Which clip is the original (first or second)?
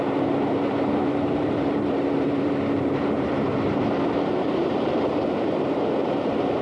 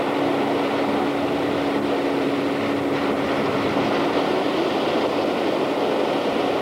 second